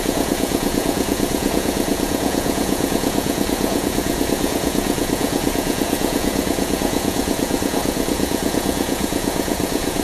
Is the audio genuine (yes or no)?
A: no